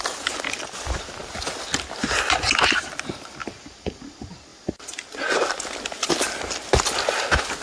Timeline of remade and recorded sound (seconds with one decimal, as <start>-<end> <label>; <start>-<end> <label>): 0.0-3.4 recorded; 3.4-4.0 remade; 4.0-7.6 recorded